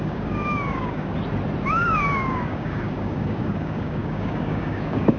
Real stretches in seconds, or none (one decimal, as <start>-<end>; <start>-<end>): 1.1-1.7